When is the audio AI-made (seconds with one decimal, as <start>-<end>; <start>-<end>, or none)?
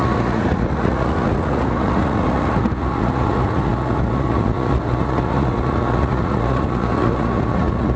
0.0-8.0